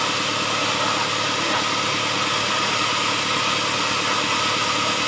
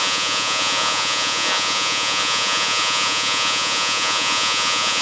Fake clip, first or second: second